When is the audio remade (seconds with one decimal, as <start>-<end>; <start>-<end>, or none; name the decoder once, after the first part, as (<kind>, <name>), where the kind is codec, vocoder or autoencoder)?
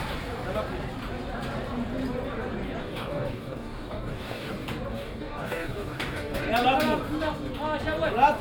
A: 2.8-4.5 (codec, DAC); 4.9-6.4